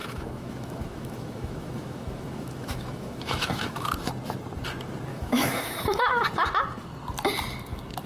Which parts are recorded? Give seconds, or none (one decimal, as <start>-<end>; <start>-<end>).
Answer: 3.9-5.1; 6.2-8.1